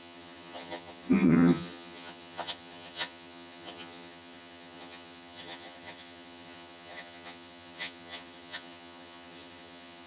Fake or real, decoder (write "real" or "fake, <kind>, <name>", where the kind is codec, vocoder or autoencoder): fake, vocoder, HiFi-GAN